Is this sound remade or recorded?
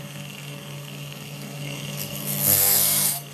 remade